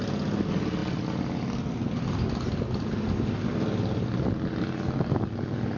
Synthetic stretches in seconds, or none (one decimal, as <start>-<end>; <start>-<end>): none